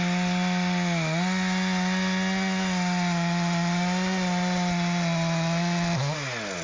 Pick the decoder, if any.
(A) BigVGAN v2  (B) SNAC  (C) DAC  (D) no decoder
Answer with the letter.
D